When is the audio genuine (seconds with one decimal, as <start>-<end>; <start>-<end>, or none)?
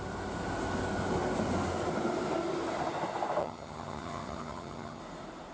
0.0-3.4; 5.0-5.5